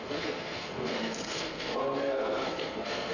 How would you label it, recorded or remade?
remade